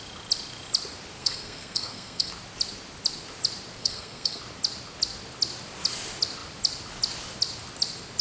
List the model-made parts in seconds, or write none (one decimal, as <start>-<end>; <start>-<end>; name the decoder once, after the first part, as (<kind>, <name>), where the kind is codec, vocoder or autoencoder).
1.2-2.3 (codec, SNAC); 3.8-4.4